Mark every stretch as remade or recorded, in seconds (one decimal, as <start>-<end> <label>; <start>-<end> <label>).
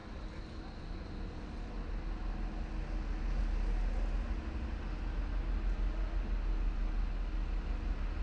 0.0-8.2 recorded